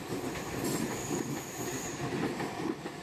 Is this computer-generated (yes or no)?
no